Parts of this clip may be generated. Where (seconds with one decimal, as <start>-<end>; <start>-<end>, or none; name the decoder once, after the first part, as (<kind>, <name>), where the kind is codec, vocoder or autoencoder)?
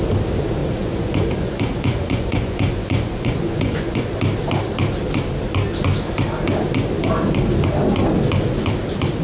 0.6-4.1 (vocoder, Vocos)